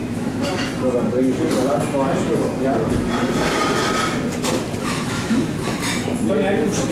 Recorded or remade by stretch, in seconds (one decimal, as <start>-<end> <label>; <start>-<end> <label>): 0.0-0.7 remade; 0.7-4.8 recorded; 4.8-5.7 remade; 5.7-6.9 recorded